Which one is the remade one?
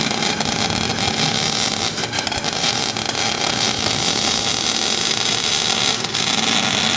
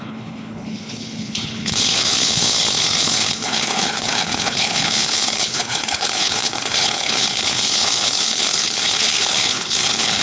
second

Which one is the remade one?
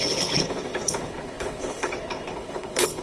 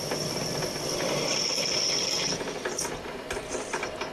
first